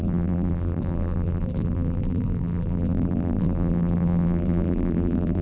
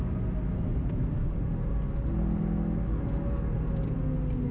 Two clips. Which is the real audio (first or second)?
second